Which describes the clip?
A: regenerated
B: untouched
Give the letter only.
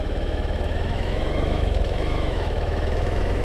A